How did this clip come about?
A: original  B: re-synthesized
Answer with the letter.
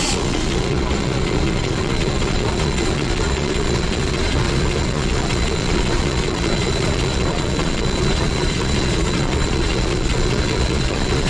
B